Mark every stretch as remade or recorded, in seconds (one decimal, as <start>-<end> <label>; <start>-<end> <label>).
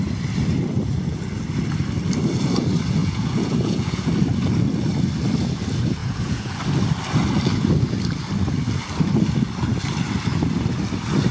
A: 0.0-3.0 recorded; 3.0-4.1 remade; 4.1-6.0 recorded; 6.0-6.6 remade; 6.6-11.3 recorded